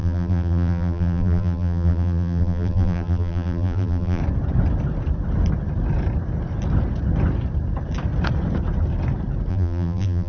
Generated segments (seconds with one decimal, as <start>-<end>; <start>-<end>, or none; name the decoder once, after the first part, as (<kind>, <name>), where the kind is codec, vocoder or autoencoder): 0.0-4.2 (vocoder, BigVGAN v2); 9.5-10.3